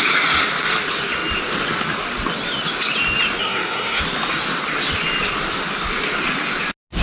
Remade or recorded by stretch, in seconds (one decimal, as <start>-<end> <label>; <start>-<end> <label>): 0.0-3.4 recorded; 3.4-4.0 remade; 4.0-7.0 recorded